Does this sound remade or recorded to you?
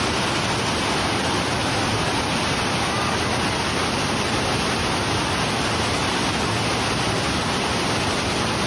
recorded